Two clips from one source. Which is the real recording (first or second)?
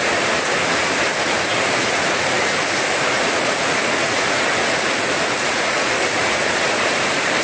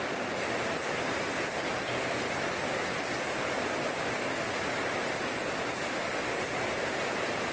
second